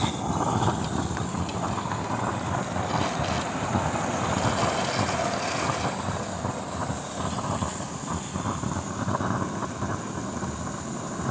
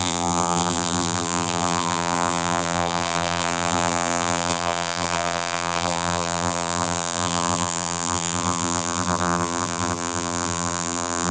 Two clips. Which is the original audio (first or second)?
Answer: first